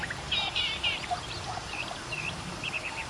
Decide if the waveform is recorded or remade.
remade